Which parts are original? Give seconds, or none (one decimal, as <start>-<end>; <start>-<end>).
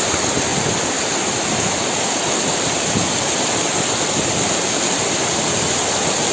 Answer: 0.0-6.3